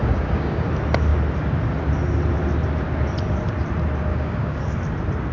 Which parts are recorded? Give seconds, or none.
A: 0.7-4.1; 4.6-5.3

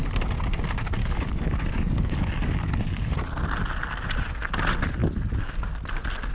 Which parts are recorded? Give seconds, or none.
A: 0.0-1.0; 2.7-6.3

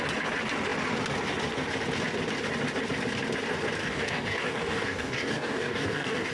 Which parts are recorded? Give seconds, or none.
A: 0.0-3.8

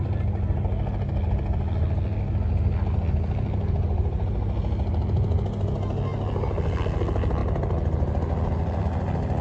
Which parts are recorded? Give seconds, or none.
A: 0.0-9.4

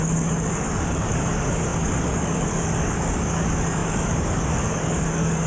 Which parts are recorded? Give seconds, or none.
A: none